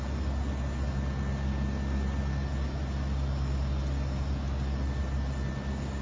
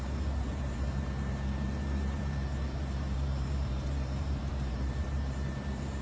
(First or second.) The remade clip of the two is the second